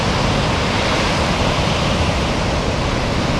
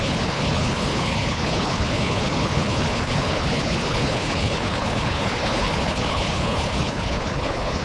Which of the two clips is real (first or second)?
first